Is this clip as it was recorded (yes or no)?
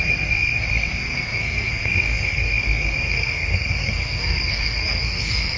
no